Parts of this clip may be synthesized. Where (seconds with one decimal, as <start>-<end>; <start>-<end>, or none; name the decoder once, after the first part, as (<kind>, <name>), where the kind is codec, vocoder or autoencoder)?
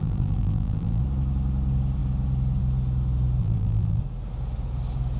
0.0-1.0 (vocoder, BigVGAN v2); 3.4-4.0